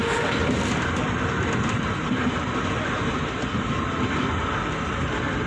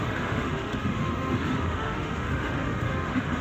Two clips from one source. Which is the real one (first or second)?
first